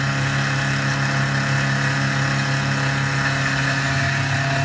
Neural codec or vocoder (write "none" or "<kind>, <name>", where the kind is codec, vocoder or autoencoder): none